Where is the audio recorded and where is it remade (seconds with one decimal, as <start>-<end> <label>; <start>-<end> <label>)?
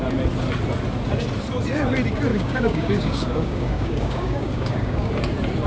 0.0-2.3 recorded; 2.3-5.1 remade; 5.1-5.7 recorded